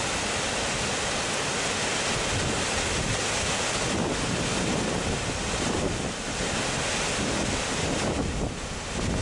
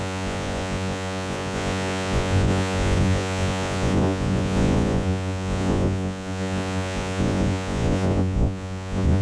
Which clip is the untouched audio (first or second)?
first